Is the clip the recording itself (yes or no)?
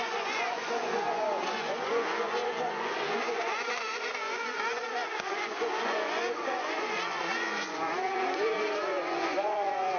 no